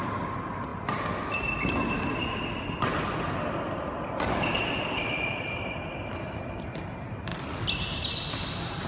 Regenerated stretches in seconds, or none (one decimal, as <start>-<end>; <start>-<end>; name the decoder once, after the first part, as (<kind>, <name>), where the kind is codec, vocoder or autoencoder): 0.7-1.4 (vocoder, BigVGAN v2); 7.3-8.5